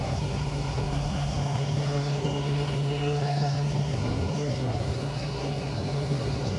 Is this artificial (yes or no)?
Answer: yes